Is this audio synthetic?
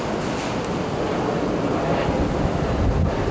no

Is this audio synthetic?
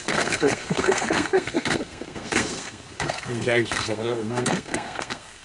yes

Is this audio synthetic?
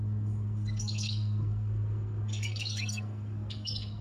yes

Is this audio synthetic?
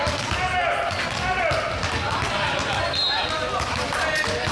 no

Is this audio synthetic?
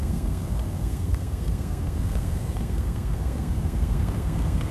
yes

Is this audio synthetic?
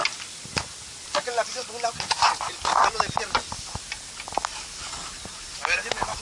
no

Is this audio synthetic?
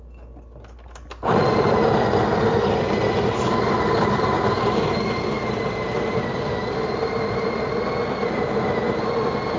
no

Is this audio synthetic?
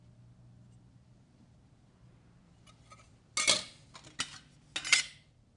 no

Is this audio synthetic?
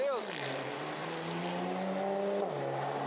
no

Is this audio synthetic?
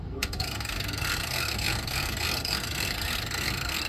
yes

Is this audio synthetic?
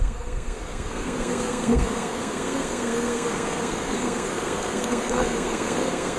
yes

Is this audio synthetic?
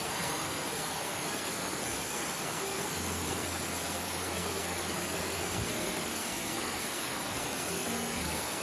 yes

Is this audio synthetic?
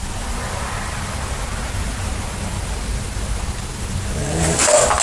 no